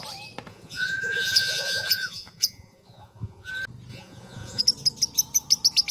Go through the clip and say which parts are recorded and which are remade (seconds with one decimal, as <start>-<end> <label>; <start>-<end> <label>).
0.0-0.5 recorded; 0.5-3.5 remade; 3.5-3.9 recorded; 3.9-4.6 remade; 4.6-5.9 recorded